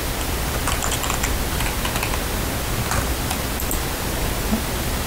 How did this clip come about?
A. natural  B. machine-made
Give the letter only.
A